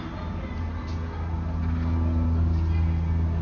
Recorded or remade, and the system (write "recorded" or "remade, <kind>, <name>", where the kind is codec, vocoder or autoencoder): recorded